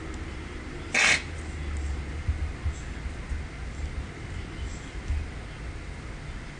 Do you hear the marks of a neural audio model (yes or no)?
no